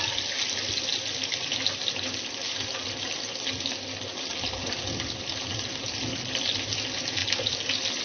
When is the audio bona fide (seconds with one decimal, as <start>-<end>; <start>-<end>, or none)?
0.0-8.0